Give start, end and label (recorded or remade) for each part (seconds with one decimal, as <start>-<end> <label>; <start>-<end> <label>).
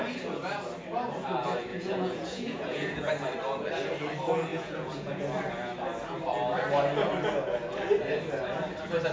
0.0-1.7 recorded; 1.7-3.1 remade; 3.1-4.5 recorded; 4.5-5.2 remade; 5.2-9.1 recorded